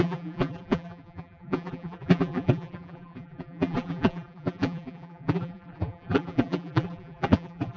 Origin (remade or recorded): remade